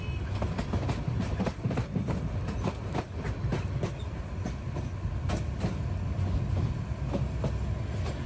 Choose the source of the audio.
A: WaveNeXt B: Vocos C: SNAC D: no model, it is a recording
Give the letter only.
D